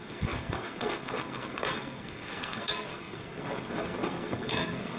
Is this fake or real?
fake